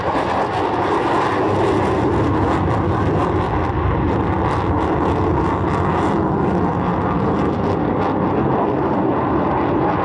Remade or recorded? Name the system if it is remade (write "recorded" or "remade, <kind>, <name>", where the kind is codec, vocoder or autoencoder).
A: recorded